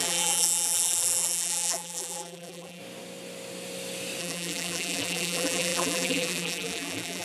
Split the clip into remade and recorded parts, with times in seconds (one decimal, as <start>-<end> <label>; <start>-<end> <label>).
0.0-2.8 remade; 2.8-4.2 recorded; 4.2-7.2 remade

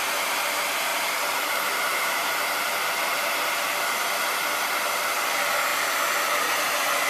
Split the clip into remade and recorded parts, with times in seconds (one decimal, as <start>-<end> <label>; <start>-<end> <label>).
0.0-7.1 recorded

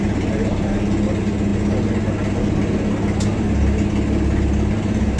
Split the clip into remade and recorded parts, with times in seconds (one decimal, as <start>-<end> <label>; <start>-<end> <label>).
0.0-5.2 recorded

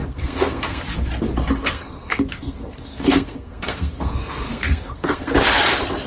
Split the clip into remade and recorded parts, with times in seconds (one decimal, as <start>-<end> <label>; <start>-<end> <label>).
0.0-0.8 remade; 0.8-1.6 recorded; 1.6-5.3 remade; 5.3-6.1 recorded

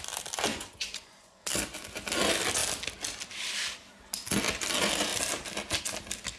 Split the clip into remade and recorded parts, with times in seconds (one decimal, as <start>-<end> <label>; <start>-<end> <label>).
0.0-0.5 recorded; 0.5-1.4 remade; 1.4-6.4 recorded

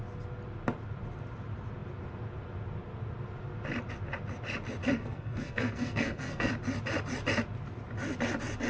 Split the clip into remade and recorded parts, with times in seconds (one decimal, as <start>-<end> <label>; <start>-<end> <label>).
0.0-4.8 recorded; 4.8-6.5 remade; 6.5-8.7 recorded

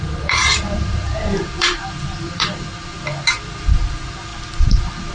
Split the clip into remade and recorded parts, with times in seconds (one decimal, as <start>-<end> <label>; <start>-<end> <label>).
0.0-5.1 remade